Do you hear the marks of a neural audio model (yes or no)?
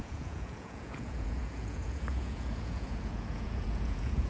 yes